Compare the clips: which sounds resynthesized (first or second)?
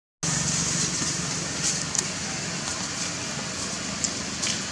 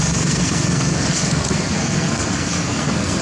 second